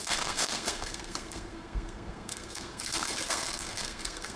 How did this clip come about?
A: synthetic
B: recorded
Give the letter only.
A